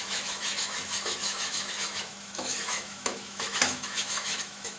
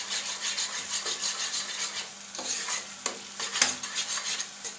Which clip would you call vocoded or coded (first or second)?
first